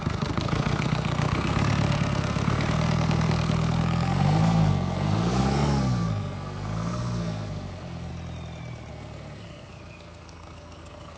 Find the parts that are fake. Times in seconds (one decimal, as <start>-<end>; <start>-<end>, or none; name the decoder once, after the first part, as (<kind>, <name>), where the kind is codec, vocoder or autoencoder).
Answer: 0.0-8.1 (codec, SNAC); 8.9-11.2